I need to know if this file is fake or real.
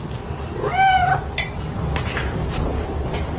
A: real